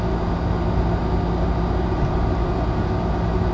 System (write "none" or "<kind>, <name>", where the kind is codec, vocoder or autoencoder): none